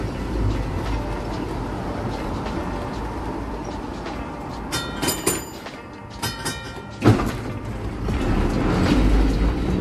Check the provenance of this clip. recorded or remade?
recorded